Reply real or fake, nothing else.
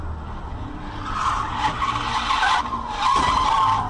real